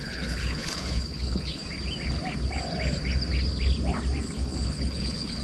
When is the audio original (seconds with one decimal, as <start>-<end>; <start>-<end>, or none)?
1.6-4.2